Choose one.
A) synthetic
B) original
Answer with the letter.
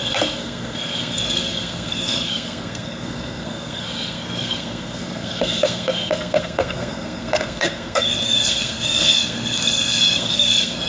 A